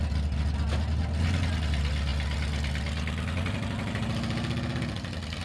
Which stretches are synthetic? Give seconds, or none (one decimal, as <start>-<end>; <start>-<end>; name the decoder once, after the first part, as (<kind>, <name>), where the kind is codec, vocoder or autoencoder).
none

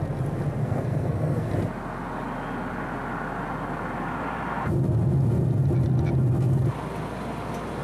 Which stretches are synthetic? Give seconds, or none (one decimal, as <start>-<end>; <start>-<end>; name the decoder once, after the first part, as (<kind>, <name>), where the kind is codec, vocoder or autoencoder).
0.6-1.5 (codec, SNAC)

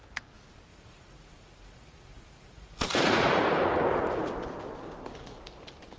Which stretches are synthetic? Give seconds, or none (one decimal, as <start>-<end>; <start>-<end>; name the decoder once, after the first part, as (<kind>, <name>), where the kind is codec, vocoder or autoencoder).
0.7-4.3 (vocoder, Vocos)

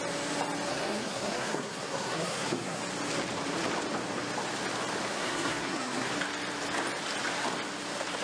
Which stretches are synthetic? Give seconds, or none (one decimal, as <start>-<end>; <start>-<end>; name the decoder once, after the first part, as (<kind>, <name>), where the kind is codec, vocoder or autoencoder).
0.7-2.8 (codec, SNAC); 5.1-6.1

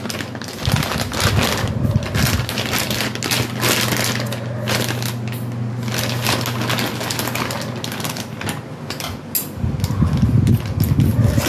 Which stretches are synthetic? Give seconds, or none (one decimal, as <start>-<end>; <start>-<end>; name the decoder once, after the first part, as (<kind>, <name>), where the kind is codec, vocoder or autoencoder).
none

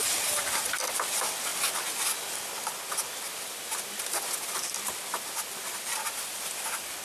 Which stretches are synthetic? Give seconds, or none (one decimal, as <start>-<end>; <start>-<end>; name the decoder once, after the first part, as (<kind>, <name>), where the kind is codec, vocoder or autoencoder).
0.0-1.5 (vocoder, BigVGAN v2); 4.3-7.0